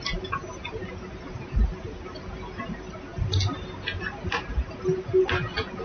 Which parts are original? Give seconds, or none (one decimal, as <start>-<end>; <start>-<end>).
0.0-5.8